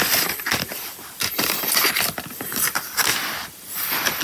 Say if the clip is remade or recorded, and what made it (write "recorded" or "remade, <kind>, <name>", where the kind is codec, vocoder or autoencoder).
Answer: remade, vocoder, BigVGAN v2